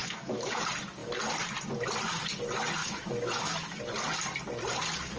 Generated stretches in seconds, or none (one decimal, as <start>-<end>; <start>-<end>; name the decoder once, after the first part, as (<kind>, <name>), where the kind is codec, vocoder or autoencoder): 0.0-0.6 (autoencoder, DAC-VAE); 2.8-3.8